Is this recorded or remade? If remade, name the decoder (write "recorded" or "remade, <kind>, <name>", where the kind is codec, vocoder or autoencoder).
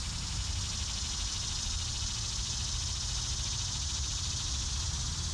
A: recorded